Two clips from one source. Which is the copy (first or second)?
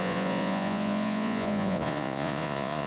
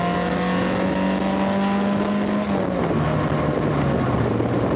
first